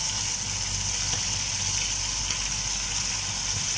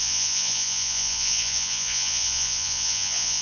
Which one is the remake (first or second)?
second